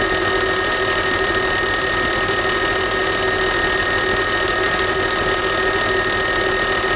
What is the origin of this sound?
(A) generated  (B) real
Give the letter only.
B